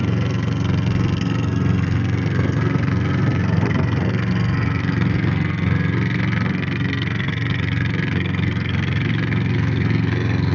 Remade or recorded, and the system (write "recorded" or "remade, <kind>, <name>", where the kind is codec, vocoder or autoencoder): remade, codec, SNAC